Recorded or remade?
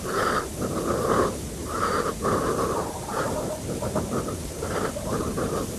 remade